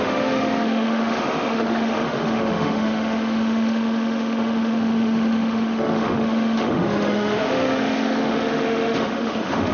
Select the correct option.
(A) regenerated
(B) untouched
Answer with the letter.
A